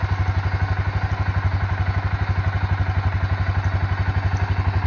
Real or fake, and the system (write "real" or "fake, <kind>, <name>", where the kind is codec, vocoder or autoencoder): real